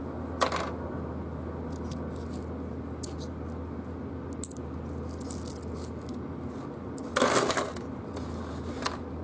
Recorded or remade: recorded